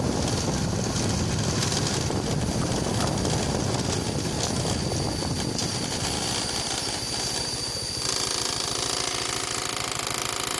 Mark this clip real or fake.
real